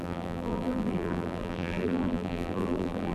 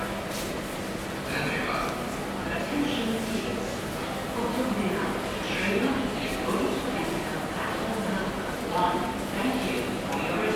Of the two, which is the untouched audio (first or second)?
second